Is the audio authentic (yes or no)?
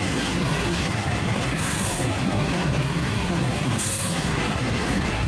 no